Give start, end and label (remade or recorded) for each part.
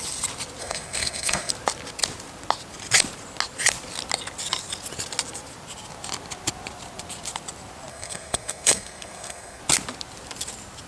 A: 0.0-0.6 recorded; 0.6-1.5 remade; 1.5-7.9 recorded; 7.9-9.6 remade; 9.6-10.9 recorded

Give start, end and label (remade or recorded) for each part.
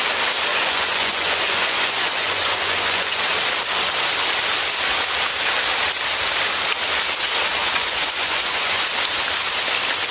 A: 0.0-0.5 recorded; 0.5-3.2 remade; 3.2-7.6 recorded; 7.6-8.9 remade; 8.9-10.1 recorded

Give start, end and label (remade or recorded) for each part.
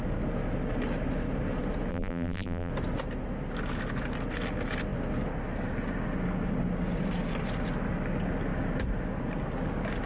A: 0.0-1.9 recorded; 1.9-2.7 remade; 2.7-10.1 recorded